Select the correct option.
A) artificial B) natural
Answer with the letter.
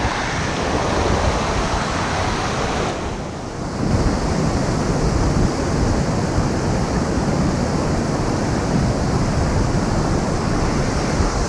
B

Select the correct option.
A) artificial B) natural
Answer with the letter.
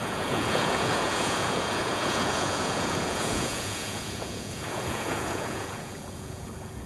A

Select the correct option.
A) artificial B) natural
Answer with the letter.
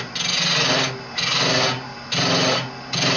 B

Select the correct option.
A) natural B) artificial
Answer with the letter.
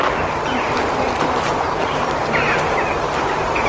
A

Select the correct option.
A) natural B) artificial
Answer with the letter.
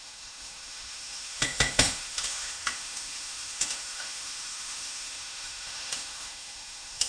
B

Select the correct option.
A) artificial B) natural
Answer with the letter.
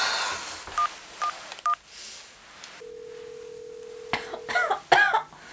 B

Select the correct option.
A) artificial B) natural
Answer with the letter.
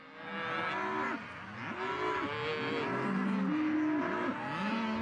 B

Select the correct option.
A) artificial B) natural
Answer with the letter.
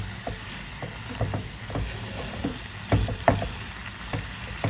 B